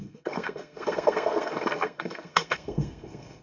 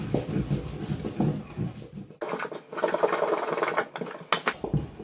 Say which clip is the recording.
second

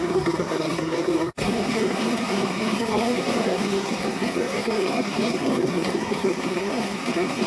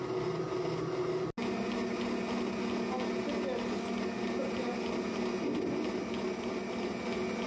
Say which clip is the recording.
second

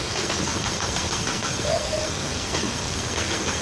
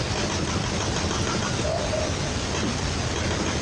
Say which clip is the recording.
second